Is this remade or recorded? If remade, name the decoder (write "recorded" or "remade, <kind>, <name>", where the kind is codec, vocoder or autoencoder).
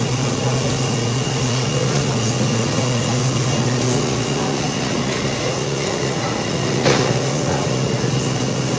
remade, vocoder, Vocos